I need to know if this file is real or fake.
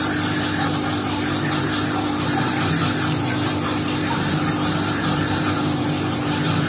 fake